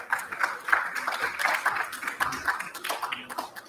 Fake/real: real